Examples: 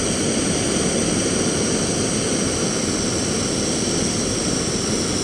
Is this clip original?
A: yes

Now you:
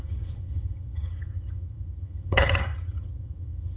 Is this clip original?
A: no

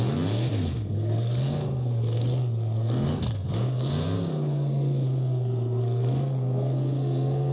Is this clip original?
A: no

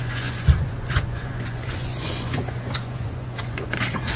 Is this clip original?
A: no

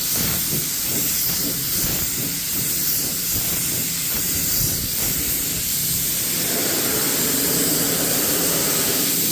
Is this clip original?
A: yes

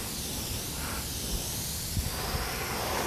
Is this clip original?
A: yes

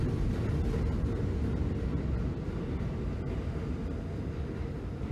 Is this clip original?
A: yes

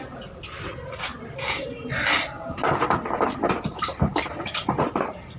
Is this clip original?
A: yes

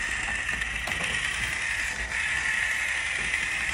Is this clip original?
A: yes